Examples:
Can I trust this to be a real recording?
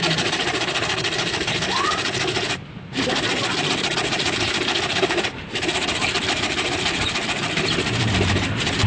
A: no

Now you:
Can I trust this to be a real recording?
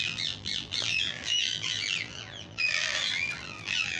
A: no